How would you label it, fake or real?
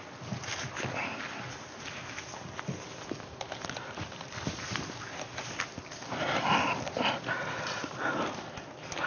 real